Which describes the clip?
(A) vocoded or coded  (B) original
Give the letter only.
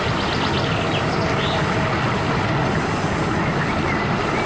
B